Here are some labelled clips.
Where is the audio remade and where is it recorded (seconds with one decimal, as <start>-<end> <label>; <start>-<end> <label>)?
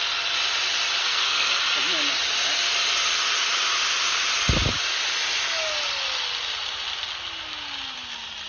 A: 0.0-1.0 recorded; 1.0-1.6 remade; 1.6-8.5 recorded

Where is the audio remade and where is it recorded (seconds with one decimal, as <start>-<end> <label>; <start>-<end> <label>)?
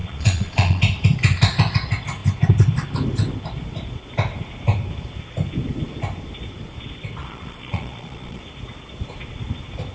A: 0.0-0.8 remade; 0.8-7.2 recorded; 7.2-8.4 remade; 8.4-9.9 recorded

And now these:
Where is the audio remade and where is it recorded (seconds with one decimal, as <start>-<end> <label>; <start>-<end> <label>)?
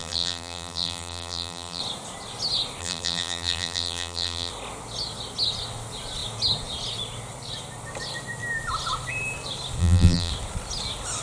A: 0.0-1.8 remade; 1.8-2.8 recorded; 2.8-4.5 remade; 4.5-9.8 recorded; 9.8-10.3 remade; 10.3-11.2 recorded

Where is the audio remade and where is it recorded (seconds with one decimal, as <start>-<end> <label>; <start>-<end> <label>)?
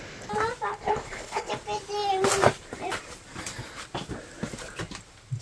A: 0.0-0.7 recorded; 0.7-1.5 remade; 1.5-5.4 recorded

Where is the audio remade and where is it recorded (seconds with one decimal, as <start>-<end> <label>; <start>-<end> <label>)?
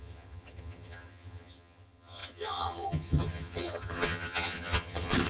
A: 0.0-5.3 remade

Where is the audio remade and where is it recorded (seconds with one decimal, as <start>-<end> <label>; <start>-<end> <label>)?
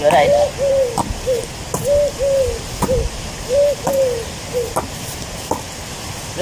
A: 0.0-6.4 recorded